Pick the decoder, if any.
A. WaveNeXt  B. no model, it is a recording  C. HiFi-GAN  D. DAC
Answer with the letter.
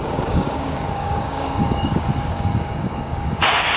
D